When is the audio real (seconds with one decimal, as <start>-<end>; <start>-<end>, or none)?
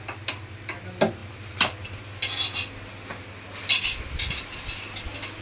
0.0-5.4